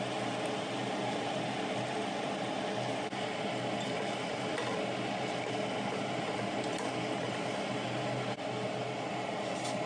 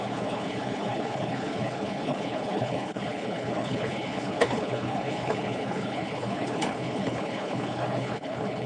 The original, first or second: first